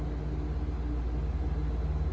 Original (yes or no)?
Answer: yes